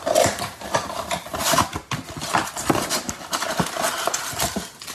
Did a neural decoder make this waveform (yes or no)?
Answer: no